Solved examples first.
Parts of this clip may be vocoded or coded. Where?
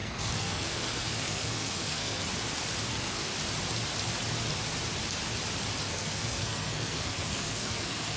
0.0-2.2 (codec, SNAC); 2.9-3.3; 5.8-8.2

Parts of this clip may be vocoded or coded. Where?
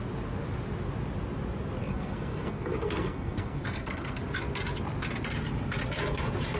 1.8-4.2 (codec, SNAC)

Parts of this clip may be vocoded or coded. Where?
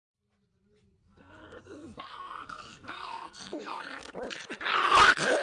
1.0-4.1 (codec, SNAC)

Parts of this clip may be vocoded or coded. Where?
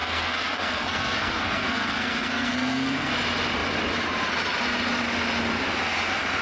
0.0-3.1 (codec, SNAC)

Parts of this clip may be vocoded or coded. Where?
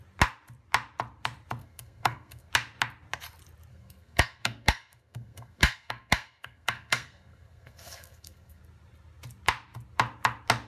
1.6-2.5 (codec, SNAC); 3.7-8.6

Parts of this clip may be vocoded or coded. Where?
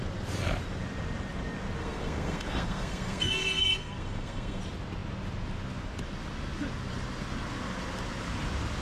1.8-4.6 (codec, SNAC)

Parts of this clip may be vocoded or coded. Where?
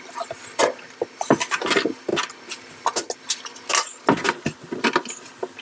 none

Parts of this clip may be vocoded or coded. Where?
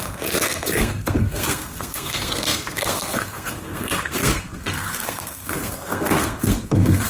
0.0-7.1 (codec, SNAC)